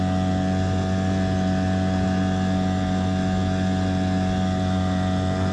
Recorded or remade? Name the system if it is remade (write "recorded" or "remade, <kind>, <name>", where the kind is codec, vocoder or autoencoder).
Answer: recorded